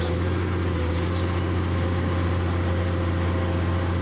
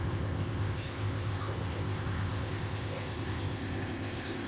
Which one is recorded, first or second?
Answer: first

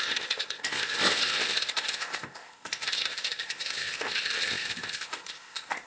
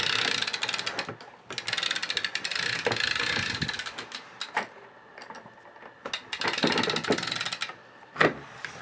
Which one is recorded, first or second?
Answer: second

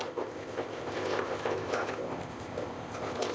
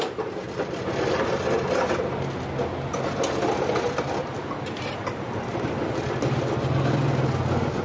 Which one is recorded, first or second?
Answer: second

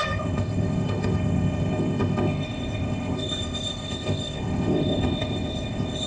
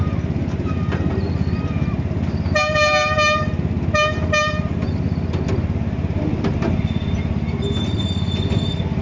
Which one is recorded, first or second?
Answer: second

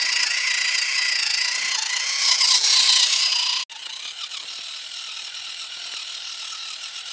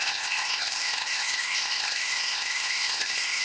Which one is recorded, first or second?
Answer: first